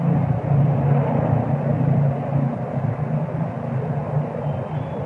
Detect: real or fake real